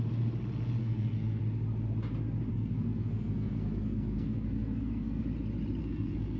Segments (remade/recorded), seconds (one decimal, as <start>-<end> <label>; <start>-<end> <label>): 0.0-0.8 recorded; 0.8-1.4 remade; 1.4-2.5 recorded; 2.5-5.2 remade; 5.2-5.8 recorded; 5.8-6.4 remade